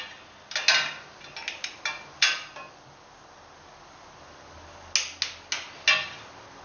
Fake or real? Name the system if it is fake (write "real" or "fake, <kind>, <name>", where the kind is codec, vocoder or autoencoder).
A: real